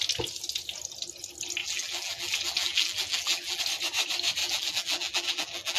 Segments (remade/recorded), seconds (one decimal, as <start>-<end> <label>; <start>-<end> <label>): 0.0-1.6 recorded; 1.6-3.6 remade; 3.6-4.4 recorded; 4.4-5.8 remade